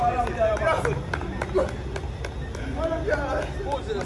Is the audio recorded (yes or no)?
yes